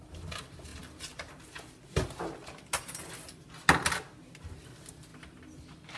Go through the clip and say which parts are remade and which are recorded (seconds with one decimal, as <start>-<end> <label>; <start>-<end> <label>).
0.0-6.0 recorded